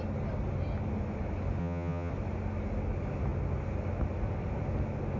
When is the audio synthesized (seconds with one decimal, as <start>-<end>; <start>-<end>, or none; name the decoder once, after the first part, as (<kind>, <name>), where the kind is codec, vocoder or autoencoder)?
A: 1.6-2.1 (vocoder, HiFi-GAN)